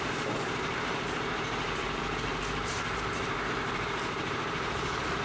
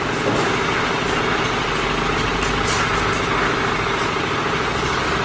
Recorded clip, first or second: second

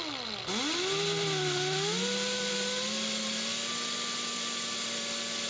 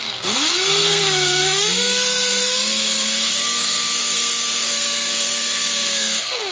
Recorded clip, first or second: first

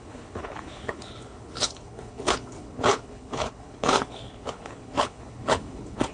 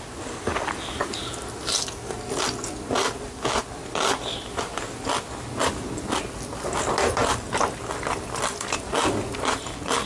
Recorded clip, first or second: second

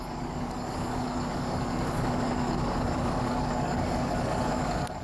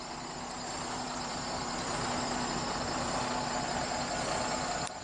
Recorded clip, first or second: second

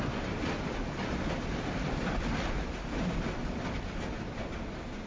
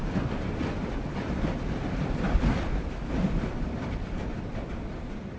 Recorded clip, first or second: first